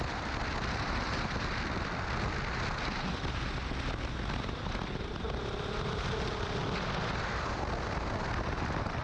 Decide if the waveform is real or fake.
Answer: real